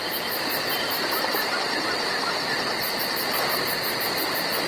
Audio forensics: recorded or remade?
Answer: remade